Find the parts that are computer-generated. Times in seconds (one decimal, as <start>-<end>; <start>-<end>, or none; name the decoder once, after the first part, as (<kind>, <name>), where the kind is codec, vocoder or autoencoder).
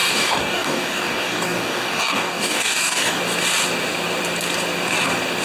0.0-3.2 (codec, DAC)